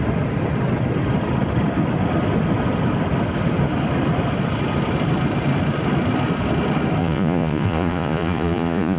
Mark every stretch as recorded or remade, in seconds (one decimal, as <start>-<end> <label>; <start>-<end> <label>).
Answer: 0.0-7.0 recorded; 7.0-9.0 remade